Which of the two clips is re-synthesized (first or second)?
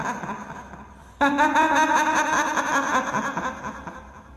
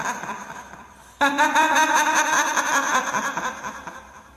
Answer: second